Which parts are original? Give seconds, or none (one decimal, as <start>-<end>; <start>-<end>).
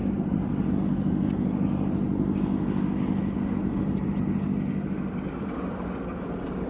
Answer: 0.0-6.7